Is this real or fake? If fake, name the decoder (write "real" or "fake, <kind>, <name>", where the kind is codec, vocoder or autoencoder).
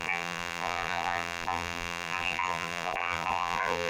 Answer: fake, vocoder, BigVGAN v2